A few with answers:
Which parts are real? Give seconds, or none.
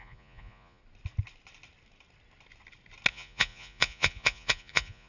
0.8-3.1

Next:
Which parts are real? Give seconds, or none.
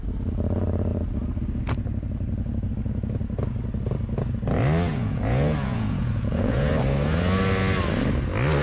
0.0-4.9; 6.7-8.6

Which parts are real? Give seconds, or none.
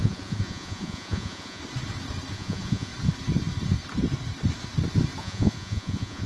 1.6-2.3; 2.9-5.2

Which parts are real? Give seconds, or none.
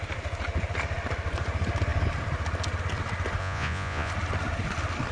0.0-3.4; 4.1-5.1